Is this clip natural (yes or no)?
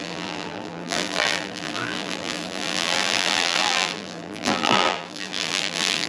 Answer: no